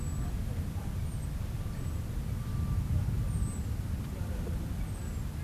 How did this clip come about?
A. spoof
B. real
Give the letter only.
B